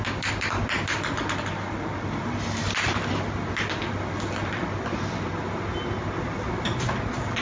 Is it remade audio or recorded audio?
recorded